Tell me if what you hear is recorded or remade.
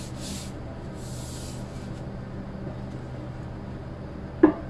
recorded